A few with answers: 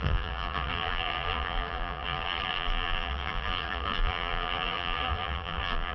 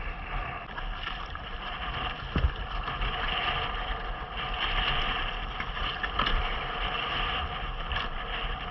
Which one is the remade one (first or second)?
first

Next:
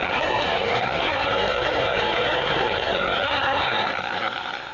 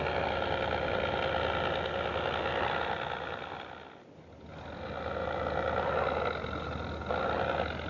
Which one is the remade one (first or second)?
first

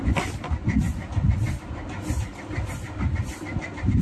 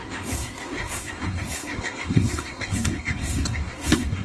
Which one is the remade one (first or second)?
second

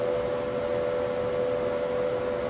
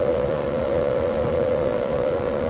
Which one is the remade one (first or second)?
second